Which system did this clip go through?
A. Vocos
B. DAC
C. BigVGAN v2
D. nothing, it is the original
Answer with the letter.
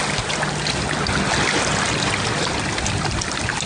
D